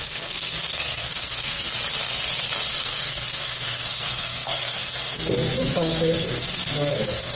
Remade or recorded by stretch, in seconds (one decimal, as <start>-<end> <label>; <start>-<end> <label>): 0.0-1.7 remade; 1.7-2.7 recorded; 2.7-7.4 remade